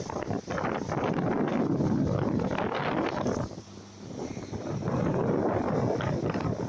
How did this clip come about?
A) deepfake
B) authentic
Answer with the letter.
B